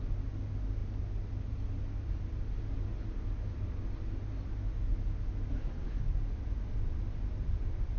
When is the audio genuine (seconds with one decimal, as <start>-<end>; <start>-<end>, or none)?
0.0-5.5; 6.0-8.0